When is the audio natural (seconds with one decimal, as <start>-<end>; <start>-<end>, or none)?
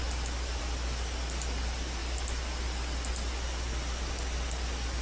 0.0-5.0